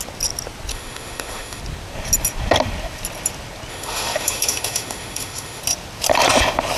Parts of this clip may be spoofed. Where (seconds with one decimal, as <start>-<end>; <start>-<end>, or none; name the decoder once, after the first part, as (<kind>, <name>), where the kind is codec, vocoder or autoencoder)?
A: 0.7-1.6 (autoencoder, DAC-VAE); 3.7-5.6

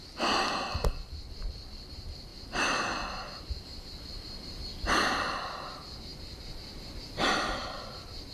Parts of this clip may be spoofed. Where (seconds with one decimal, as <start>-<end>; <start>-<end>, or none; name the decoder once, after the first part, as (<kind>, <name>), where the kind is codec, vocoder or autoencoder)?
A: 2.3-4.6 (vocoder, BigVGAN v2)

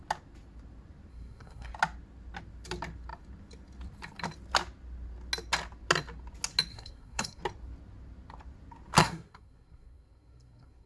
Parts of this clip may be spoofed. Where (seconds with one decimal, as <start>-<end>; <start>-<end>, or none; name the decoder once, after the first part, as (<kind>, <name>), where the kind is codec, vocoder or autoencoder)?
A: 1.1-1.7 (codec, SNAC); 6.7-7.4; 9.0-10.9

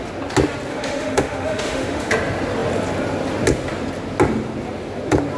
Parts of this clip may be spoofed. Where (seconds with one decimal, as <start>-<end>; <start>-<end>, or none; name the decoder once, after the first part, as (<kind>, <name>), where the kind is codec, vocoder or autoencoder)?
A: 0.7-2.1 (autoencoder, DAC-VAE)

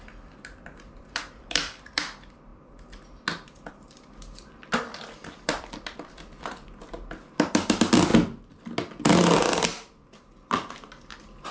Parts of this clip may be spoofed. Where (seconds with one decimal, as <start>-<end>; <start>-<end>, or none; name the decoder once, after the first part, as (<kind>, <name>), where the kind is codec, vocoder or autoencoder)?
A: 0.0-2.5 (vocoder, BigVGAN v2); 3.7-8.1; 9.0-11.5

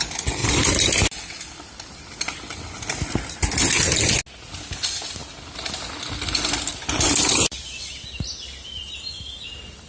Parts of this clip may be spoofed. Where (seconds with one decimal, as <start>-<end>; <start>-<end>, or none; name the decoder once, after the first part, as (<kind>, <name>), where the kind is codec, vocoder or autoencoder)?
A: none

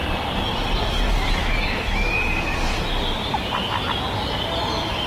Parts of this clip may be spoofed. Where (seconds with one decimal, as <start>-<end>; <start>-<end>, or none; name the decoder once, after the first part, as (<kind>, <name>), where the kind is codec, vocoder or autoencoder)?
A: 1.4-2.1 (autoencoder, DAC-VAE)

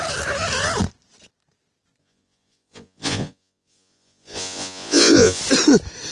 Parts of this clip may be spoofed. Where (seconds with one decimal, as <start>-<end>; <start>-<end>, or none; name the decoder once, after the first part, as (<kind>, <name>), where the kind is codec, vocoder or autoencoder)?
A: 2.0-5.4 (vocoder, Vocos)